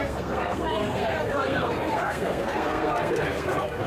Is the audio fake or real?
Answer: fake